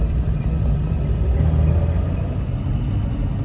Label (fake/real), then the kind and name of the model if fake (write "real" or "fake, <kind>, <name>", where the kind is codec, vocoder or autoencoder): real